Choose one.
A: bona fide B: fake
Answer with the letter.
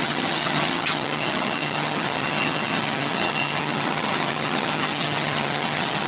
B